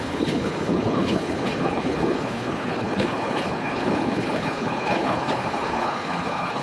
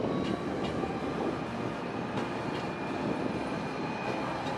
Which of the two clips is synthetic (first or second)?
first